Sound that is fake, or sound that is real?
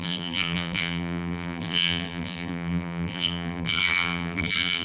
fake